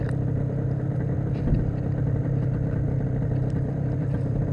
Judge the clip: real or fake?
fake